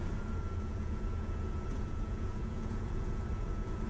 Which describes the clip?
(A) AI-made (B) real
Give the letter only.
A